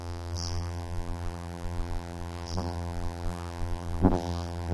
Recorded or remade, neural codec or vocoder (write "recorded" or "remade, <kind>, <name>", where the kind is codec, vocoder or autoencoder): remade, vocoder, BigVGAN v2